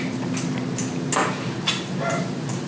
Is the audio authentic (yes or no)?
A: yes